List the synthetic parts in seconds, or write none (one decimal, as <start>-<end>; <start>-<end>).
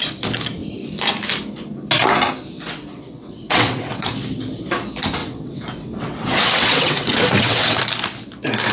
2.9-4.1; 5.2-7.8